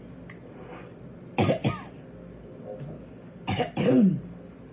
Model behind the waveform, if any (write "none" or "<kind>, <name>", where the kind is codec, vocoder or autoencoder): none